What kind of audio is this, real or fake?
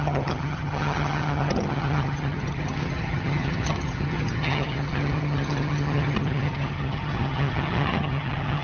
fake